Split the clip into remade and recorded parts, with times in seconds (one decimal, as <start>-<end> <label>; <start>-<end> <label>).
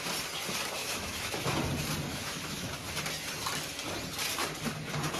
0.0-0.8 recorded; 0.8-1.6 remade; 1.6-2.1 recorded; 2.1-2.7 remade; 2.7-5.2 recorded